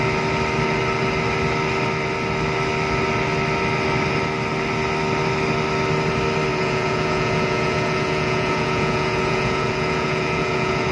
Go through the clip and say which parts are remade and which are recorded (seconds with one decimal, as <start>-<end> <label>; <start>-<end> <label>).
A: 0.0-6.5 recorded; 6.5-10.9 remade